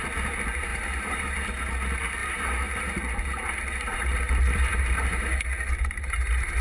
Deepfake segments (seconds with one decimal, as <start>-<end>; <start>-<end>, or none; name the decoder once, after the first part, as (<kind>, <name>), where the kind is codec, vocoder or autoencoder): 0.7-1.5 (vocoder, BigVGAN v2); 2.2-6.6